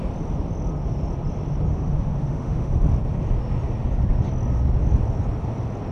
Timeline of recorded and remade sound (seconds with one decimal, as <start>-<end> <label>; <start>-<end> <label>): 0.0-1.7 recorded; 1.7-2.7 remade; 2.7-5.9 recorded